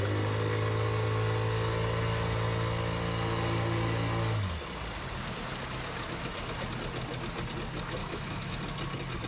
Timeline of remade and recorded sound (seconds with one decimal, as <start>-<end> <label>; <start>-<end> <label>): 0.0-8.0 recorded; 8.0-8.6 remade; 8.6-9.3 recorded